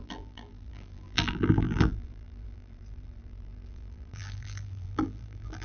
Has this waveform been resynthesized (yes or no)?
yes